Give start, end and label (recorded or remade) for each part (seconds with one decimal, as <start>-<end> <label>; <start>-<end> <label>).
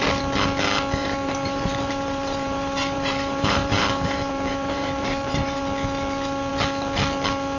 0.0-1.0 recorded; 1.0-5.6 remade; 5.6-7.6 recorded